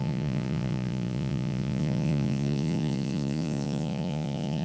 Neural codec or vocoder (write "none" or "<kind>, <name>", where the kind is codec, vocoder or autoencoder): vocoder, Vocos